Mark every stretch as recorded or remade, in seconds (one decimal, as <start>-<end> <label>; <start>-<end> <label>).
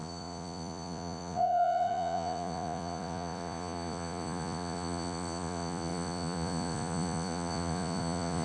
0.0-8.4 remade